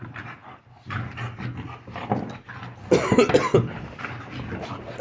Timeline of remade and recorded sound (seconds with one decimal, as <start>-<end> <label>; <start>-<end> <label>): 0.0-5.0 recorded